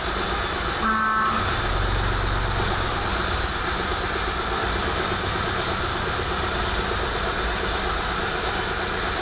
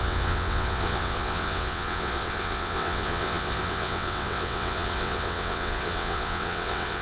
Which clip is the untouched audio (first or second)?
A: first